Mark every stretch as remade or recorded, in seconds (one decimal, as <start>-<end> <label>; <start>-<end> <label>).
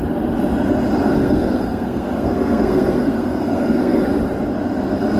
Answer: 0.0-1.1 recorded; 1.1-4.0 remade; 4.0-5.2 recorded